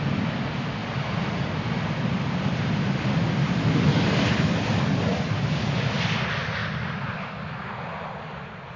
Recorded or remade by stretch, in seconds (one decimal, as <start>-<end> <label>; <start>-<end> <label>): 0.0-6.6 recorded; 6.6-7.2 remade; 7.2-8.8 recorded